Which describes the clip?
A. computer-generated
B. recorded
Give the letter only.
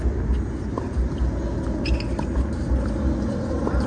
B